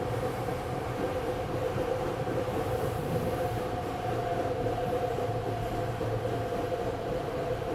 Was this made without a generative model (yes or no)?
no